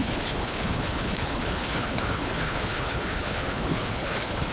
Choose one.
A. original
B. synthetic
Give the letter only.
B